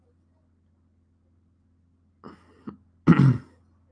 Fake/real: real